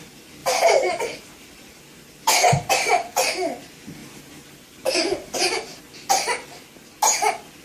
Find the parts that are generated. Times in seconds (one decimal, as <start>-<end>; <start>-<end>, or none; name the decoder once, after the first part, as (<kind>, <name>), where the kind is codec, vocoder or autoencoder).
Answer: 0.4-2.3 (vocoder, BigVGAN v2); 4.0-5.8